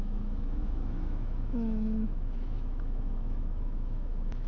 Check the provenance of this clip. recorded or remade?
remade